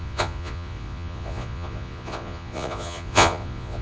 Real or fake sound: fake